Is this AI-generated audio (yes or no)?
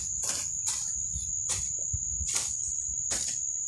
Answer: no